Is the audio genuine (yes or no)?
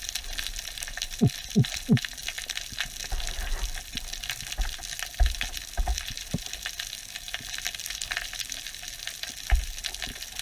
yes